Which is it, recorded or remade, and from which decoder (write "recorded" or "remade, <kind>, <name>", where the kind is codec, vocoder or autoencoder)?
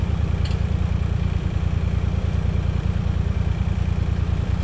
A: remade, vocoder, BigVGAN v2